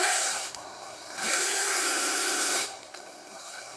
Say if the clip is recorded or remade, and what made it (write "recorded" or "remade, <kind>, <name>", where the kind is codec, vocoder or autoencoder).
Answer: remade, codec, SNAC